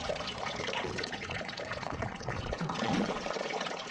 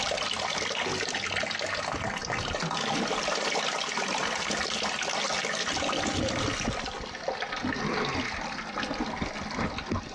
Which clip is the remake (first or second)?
first